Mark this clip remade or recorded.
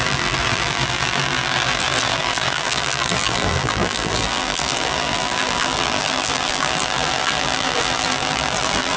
remade